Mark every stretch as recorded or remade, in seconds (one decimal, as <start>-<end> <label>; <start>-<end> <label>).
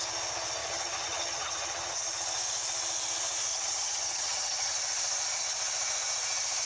0.0-0.6 recorded; 0.6-2.0 remade; 2.0-3.5 recorded; 3.5-4.7 remade; 4.7-6.7 recorded